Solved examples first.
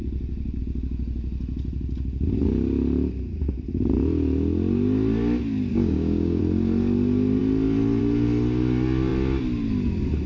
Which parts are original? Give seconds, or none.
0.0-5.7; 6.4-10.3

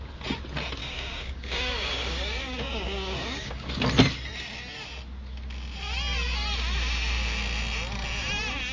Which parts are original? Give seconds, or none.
0.0-0.8; 3.7-8.7

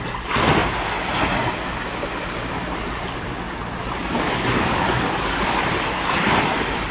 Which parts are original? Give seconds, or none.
0.0-4.0; 5.6-6.9

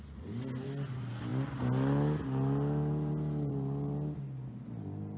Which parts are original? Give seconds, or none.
0.0-5.2

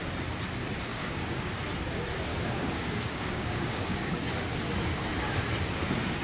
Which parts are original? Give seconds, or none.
0.0-0.9; 1.5-2.3; 4.3-6.2

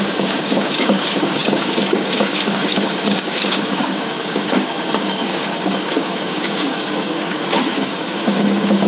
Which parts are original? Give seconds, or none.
none